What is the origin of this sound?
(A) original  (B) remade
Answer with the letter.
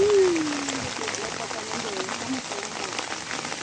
A